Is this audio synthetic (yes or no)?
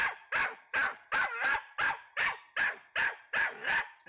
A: yes